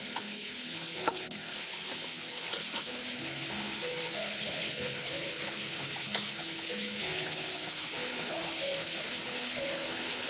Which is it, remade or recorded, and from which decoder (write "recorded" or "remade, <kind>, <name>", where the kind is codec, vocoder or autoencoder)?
remade, codec, HILCodec